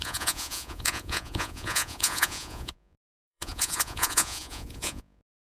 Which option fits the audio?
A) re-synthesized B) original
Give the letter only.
A